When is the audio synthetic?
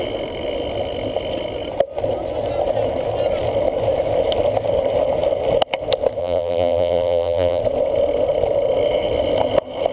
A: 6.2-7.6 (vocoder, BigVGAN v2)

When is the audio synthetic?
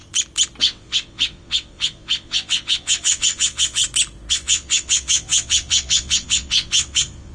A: 0.6-3.8 (vocoder, WaveNeXt); 4.3-7.3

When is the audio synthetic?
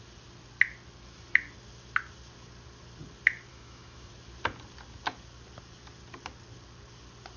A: 3.5-4.1 (autoencoder, DAC-VAE)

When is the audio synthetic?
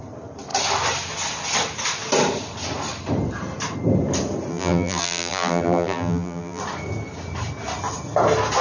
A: 4.5-6.6 (vocoder, BigVGAN v2)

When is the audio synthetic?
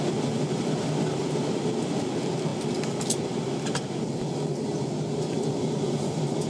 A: none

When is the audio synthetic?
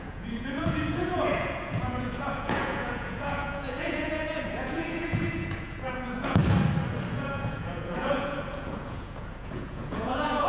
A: 0.0-6.4 (vocoder, Vocos); 7.1-10.5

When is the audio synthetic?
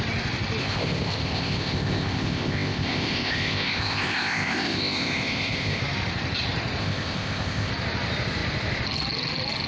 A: 0.6-5.8 (codec, ZipCodec); 6.8-7.7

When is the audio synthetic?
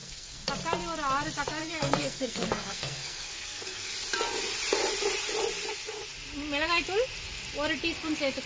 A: 0.0-0.5 (codec, SNAC); 1.6-3.9